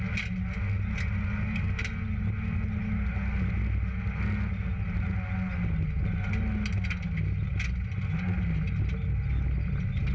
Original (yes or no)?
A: yes